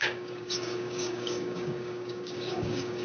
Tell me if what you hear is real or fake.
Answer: fake